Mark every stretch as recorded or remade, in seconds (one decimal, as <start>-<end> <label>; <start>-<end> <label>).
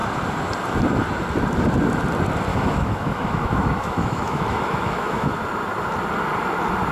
0.0-2.5 recorded; 2.5-5.4 remade; 5.4-6.9 recorded